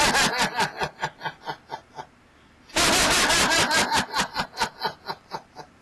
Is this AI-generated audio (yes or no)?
no